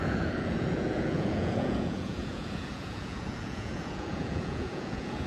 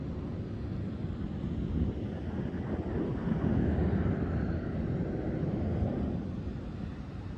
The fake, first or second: first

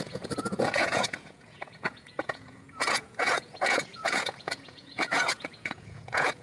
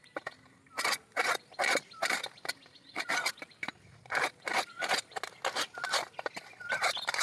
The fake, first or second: first